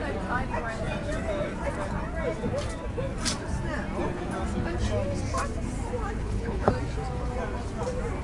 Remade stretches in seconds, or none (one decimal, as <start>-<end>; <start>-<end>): 6.2-6.7